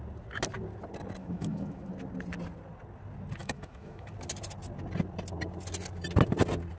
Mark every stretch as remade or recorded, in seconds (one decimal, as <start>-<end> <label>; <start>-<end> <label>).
0.0-1.2 recorded; 1.2-1.9 remade; 1.9-3.4 recorded; 3.4-4.1 remade; 4.1-6.8 recorded